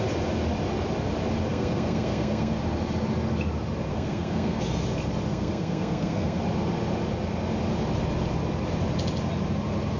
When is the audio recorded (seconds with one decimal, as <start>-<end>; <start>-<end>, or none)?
0.0-1.5; 2.6-3.9; 4.6-5.3; 6.4-10.0